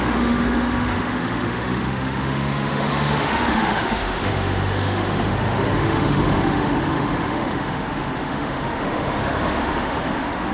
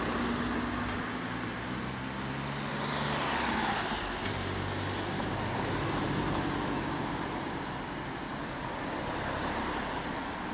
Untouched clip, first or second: second